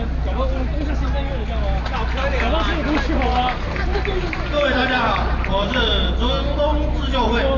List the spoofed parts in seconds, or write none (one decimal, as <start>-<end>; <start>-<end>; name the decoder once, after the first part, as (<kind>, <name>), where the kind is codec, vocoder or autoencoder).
none